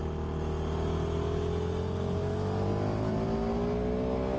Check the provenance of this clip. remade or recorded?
recorded